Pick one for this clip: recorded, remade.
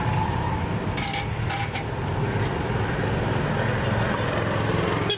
recorded